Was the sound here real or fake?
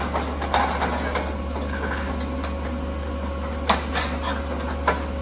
real